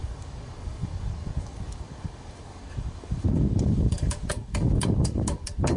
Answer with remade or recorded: remade